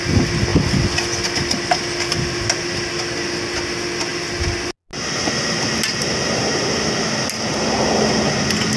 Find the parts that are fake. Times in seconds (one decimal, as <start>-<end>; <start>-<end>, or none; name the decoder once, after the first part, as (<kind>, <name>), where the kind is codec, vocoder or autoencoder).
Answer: none